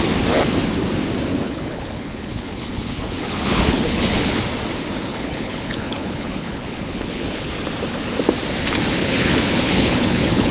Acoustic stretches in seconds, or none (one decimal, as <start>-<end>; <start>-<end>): 0.0-1.3; 4.4-5.1; 7.5-9.0